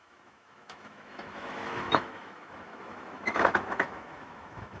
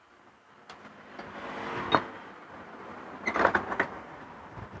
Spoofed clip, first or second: first